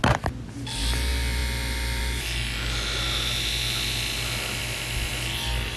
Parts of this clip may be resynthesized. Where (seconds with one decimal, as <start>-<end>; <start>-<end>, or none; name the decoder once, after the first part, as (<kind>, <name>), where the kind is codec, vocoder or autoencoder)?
none